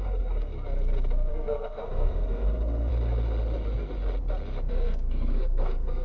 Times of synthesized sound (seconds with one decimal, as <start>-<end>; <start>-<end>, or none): 0.0-0.5; 1.3-2.9; 4.7-6.0